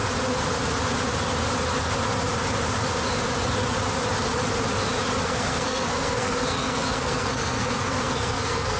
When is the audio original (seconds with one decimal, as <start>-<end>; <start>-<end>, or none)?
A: 0.0-5.2